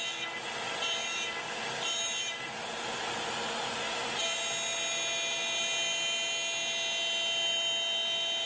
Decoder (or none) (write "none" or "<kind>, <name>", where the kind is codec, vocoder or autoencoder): none